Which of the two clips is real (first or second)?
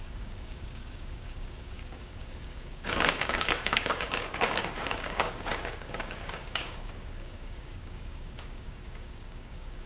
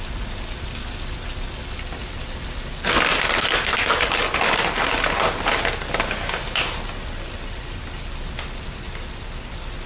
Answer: second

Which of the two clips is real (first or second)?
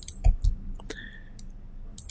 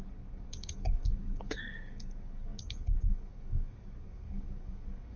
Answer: first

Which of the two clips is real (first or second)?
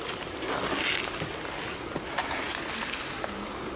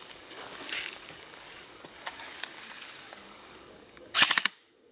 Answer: first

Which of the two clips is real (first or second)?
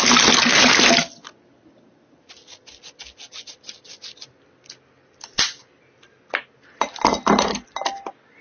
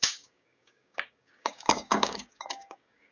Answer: first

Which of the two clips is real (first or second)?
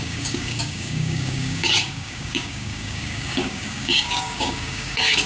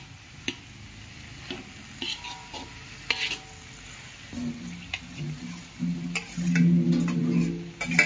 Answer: second